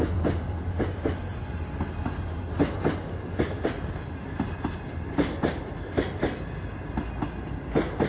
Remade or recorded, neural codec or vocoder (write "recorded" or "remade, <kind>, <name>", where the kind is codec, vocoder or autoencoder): recorded